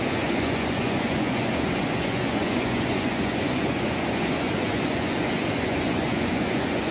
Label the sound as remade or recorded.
remade